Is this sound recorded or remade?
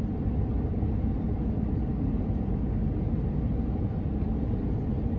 recorded